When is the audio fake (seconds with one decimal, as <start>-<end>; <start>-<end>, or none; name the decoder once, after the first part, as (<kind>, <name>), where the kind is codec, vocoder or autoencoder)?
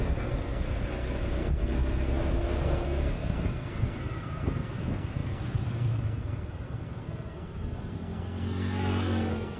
0.0-9.6 (codec, SNAC)